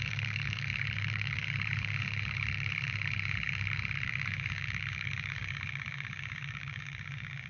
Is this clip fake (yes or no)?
yes